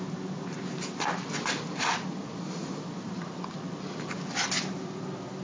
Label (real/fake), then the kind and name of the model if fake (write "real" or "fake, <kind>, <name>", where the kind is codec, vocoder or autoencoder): real